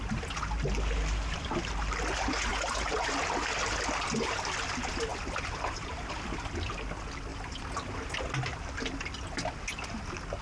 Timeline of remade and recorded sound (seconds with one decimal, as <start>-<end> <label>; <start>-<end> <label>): 0.0-10.4 recorded